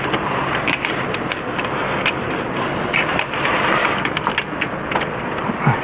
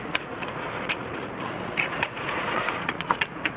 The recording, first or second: first